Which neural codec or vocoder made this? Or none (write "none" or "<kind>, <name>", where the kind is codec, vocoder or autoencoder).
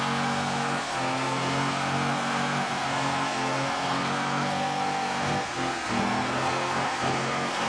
codec, SNAC